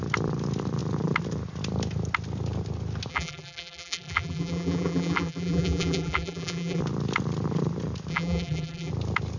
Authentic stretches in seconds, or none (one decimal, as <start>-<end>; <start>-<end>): 0.0-3.1; 6.8-8.1; 8.9-9.4